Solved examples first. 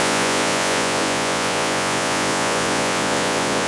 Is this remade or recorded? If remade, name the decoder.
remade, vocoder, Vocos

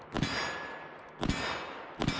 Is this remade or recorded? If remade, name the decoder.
recorded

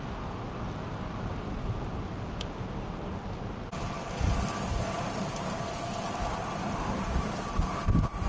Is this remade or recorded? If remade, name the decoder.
recorded